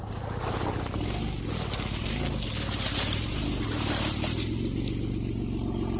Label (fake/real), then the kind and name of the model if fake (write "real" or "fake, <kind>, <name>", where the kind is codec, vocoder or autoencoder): real